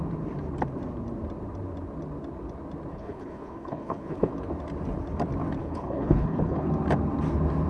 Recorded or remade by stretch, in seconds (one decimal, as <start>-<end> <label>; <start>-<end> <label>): 0.0-2.9 recorded; 2.9-4.3 remade; 4.3-5.6 recorded; 5.6-6.7 remade; 6.7-7.7 recorded